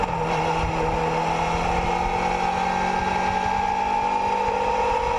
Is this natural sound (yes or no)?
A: yes